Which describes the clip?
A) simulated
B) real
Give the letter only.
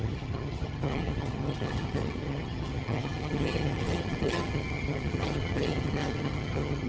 A